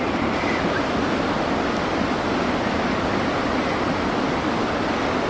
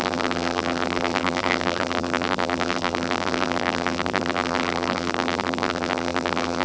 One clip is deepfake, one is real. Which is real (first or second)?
first